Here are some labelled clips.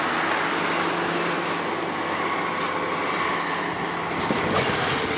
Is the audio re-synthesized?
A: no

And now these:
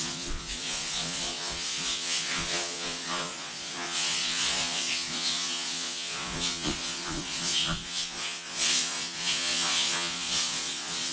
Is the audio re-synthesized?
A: yes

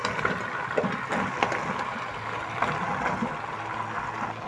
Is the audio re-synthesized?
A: no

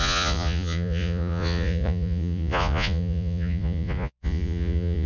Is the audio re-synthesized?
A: yes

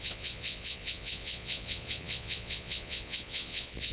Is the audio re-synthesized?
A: yes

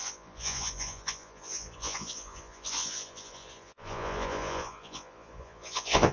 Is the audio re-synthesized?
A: yes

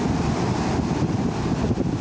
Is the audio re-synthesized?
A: no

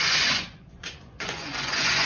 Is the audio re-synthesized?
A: yes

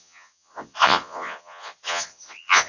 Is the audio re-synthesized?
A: yes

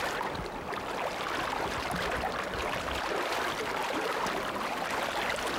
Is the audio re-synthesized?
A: no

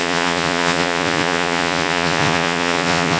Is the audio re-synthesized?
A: yes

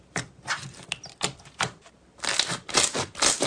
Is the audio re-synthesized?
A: no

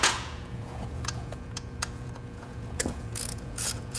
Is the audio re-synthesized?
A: yes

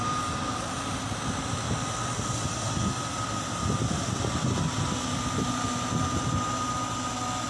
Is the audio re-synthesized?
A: no